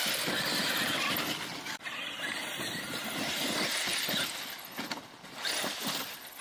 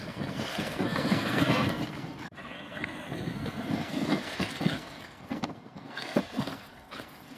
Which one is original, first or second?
first